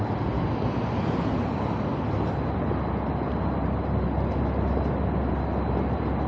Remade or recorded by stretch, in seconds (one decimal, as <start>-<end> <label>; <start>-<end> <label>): 0.0-6.3 recorded